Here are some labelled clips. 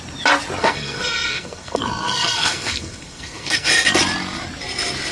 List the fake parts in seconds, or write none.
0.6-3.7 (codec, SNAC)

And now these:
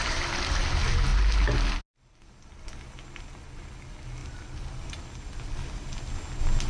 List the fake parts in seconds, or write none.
none

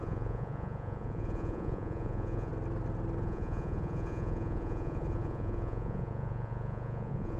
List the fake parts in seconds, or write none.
0.0-2.5 (vocoder, Vocos); 3.2-7.4

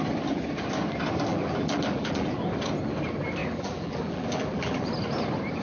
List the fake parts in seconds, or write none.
1.3-2.3 (vocoder, BigVGAN v2); 3.4-4.9